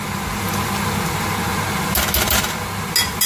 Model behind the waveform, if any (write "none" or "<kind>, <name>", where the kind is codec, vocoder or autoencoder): none